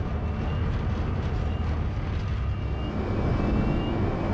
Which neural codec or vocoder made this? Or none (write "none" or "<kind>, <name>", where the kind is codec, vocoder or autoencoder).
none